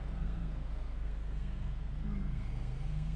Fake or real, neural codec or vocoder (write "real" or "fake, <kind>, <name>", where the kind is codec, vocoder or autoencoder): fake, codec, SNAC